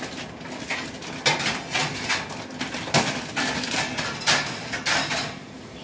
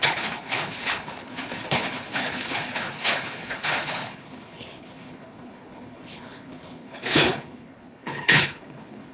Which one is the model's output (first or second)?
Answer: second